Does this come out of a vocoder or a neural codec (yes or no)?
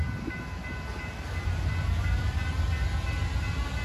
no